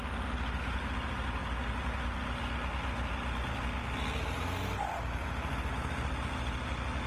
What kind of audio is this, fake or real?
real